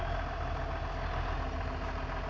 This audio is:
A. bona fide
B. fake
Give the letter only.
A